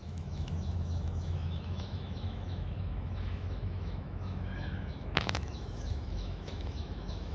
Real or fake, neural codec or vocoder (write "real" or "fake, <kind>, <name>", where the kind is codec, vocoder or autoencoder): fake, autoencoder, DAC-VAE